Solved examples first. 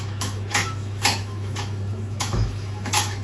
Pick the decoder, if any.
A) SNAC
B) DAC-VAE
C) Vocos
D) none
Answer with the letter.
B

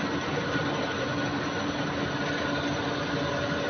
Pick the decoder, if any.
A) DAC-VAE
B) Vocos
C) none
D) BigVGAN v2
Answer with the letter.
C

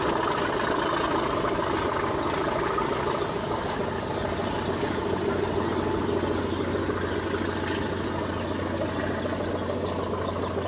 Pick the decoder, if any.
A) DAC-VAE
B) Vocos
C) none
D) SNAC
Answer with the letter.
C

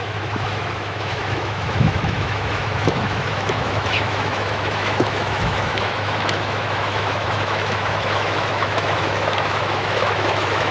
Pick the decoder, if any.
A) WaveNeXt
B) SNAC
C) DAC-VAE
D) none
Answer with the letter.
C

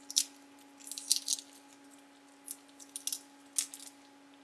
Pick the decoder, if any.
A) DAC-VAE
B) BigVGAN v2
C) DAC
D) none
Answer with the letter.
D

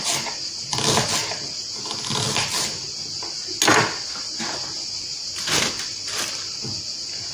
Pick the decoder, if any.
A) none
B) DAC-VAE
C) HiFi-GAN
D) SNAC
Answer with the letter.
A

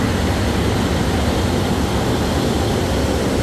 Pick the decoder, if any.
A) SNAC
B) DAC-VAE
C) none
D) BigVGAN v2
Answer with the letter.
C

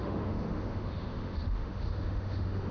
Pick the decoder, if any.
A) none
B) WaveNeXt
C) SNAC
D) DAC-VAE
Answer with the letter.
D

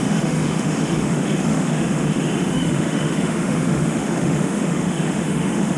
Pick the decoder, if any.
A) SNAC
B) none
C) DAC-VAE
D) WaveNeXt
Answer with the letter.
C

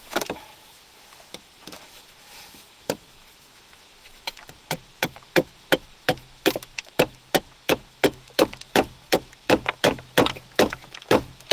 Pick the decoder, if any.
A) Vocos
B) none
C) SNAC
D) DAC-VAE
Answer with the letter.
D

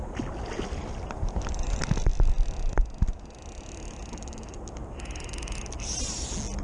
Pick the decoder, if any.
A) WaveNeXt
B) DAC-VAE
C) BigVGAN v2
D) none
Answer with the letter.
D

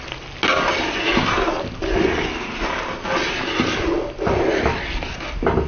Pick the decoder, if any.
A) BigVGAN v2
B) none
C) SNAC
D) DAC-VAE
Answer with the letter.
B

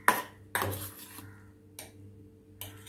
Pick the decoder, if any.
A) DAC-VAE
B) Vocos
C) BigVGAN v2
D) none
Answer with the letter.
D